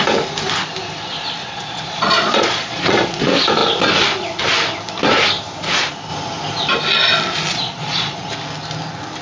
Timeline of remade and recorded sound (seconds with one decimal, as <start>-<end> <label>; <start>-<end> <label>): 0.0-1.4 recorded; 1.4-3.2 remade; 3.2-7.5 recorded; 7.5-8.3 remade; 8.3-9.2 recorded